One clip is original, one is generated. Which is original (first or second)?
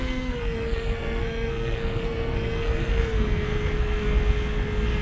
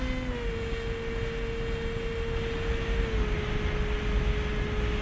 second